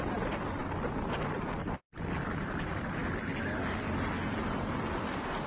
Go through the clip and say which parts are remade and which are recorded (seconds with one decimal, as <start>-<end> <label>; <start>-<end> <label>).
0.0-5.5 recorded